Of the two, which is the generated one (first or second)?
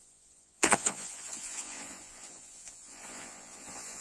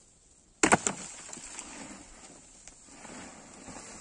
first